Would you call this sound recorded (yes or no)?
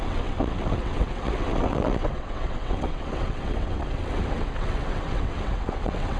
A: no